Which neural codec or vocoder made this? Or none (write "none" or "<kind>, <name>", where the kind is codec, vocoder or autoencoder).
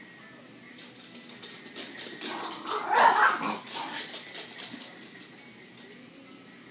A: none